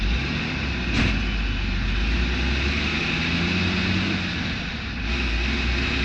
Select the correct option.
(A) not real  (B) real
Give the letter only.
B